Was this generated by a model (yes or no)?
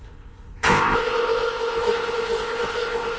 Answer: yes